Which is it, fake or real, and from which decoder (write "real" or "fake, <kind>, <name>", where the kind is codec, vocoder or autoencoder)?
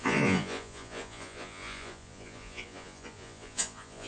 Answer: fake, vocoder, Vocos